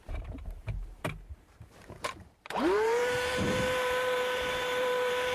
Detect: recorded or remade remade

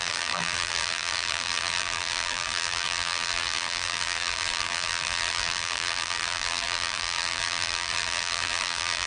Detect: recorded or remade remade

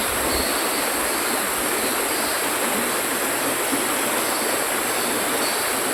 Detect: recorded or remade recorded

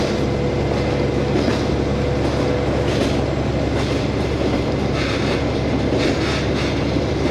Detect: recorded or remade recorded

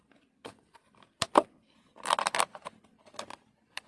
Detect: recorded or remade remade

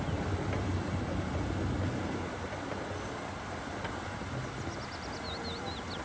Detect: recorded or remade recorded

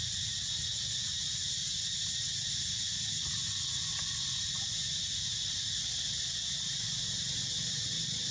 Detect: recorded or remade recorded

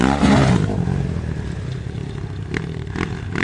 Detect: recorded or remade recorded